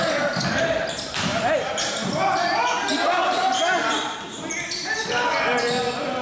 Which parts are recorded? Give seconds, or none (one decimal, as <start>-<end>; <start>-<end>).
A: 0.0-6.2